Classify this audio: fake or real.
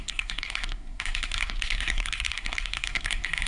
fake